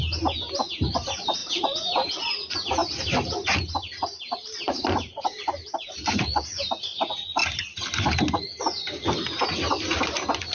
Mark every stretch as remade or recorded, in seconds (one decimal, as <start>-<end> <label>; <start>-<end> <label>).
0.0-1.4 recorded; 1.4-2.1 remade; 2.1-2.8 recorded; 2.8-6.2 remade; 6.2-10.5 recorded